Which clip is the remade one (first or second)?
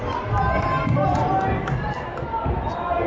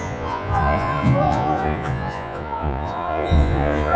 second